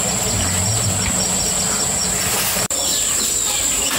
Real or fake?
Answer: real